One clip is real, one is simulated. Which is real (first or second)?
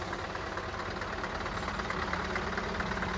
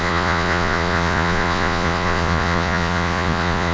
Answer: first